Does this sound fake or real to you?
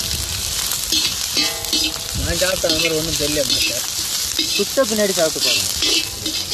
real